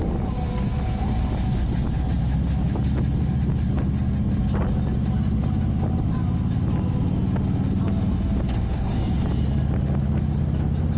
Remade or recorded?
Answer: recorded